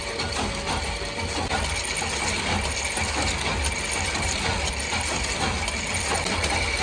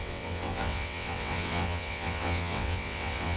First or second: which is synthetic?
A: second